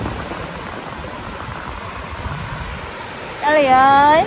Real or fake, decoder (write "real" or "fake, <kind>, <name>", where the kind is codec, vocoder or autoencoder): real